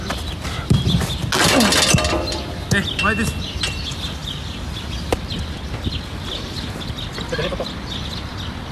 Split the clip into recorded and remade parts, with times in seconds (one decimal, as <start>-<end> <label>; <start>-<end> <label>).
0.0-8.7 recorded